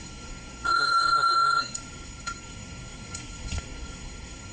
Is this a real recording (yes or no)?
no